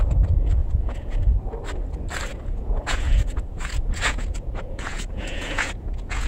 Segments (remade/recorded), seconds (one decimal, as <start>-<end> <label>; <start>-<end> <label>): 0.0-0.6 recorded; 0.6-1.3 remade; 1.3-2.3 recorded; 2.3-6.3 remade